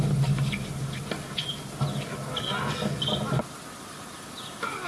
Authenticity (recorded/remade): recorded